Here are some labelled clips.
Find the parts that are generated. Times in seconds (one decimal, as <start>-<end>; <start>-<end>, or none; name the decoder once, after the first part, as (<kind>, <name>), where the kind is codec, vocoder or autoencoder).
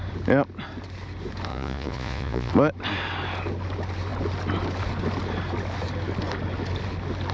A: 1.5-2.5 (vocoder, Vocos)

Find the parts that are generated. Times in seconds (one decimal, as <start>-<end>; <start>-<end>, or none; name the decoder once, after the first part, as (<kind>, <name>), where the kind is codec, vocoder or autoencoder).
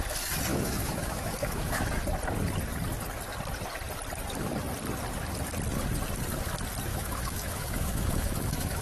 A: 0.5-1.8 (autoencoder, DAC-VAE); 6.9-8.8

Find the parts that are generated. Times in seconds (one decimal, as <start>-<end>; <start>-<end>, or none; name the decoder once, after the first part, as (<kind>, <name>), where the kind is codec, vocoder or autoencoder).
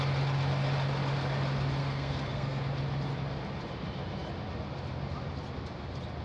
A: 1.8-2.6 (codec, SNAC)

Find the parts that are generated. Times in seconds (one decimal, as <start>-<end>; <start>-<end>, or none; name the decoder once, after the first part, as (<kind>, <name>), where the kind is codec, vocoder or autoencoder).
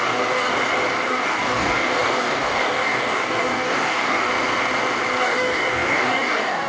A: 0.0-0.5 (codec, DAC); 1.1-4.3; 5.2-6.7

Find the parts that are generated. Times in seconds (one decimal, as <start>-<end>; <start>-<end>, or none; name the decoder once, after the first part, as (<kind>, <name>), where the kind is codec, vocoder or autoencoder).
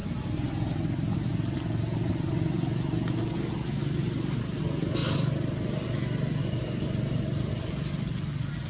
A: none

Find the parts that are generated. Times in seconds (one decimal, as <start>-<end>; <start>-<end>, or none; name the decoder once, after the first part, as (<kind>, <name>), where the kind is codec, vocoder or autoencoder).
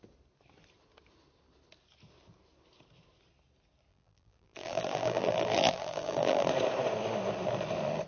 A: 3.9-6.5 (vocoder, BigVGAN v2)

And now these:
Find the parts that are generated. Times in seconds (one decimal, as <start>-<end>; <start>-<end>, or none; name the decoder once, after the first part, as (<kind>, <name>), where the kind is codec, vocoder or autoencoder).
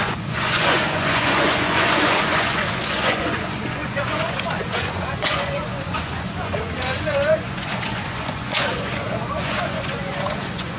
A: 0.0-10.8 (vocoder, Vocos)